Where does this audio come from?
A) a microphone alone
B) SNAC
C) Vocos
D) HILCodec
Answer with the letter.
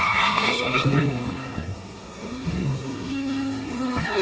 B